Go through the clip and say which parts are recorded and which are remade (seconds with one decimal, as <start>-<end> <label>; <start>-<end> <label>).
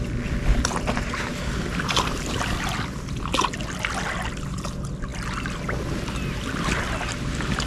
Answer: 0.0-7.7 recorded